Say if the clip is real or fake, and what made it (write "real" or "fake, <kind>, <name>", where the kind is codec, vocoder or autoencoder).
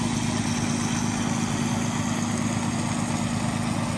real